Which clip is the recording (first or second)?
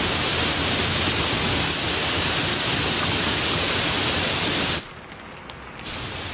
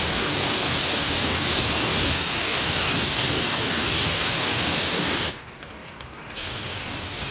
first